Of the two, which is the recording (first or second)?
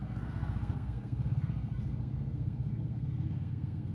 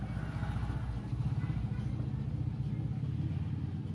second